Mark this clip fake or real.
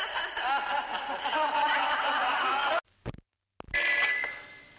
real